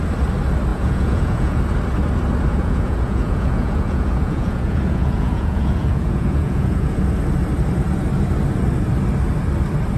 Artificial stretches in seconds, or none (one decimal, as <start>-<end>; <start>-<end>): 0.7-1.6; 2.5-7.0